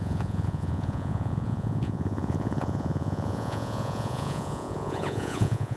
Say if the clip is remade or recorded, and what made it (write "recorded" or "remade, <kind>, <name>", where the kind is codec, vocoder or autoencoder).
remade, vocoder, Vocos